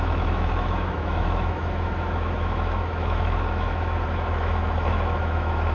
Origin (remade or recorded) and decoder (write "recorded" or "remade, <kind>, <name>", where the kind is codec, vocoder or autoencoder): remade, autoencoder, DAC-VAE